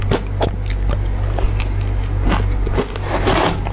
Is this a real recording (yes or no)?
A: yes